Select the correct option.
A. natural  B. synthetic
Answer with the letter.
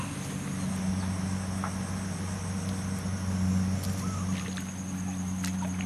A